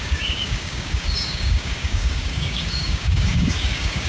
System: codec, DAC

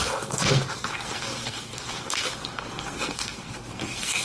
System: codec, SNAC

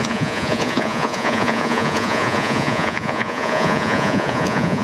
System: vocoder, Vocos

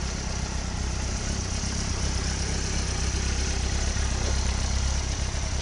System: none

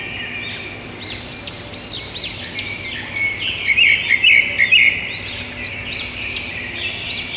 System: none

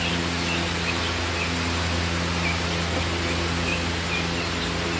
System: none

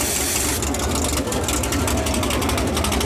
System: none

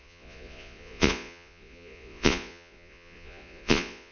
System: vocoder, Vocos